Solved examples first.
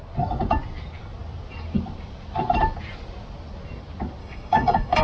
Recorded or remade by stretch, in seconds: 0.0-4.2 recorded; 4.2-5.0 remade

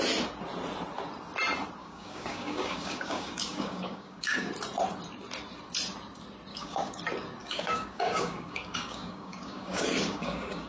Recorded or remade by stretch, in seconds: 0.0-1.8 recorded; 1.8-4.5 remade; 4.5-6.5 recorded; 6.5-7.0 remade; 7.0-7.4 recorded; 7.4-10.7 remade

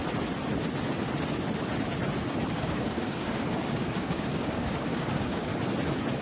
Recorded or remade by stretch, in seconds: 0.0-2.5 recorded; 2.5-5.5 remade; 5.5-6.2 recorded

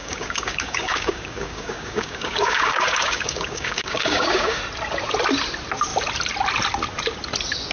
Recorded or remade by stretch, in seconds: 0.0-4.6 remade; 4.6-7.7 recorded

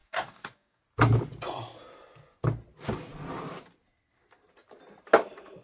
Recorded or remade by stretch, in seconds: 0.0-0.8 remade; 0.8-5.6 recorded